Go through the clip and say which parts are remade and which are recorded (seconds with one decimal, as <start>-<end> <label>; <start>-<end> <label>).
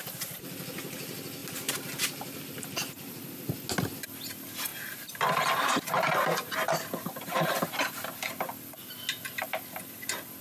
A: 0.0-4.7 recorded; 4.7-7.8 remade; 7.8-10.4 recorded